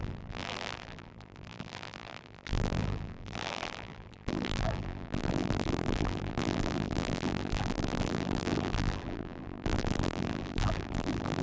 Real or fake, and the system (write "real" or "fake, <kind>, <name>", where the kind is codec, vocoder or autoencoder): fake, vocoder, BigVGAN v2